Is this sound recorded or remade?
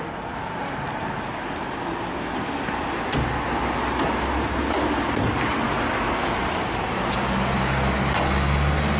recorded